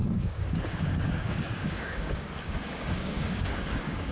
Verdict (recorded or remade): remade